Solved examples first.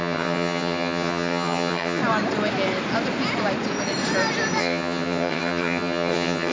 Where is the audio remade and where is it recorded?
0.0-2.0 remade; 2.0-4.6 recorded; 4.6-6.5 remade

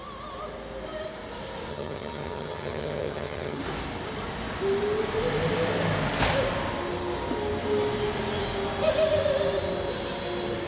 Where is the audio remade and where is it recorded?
0.0-1.7 recorded; 1.7-3.6 remade; 3.6-10.7 recorded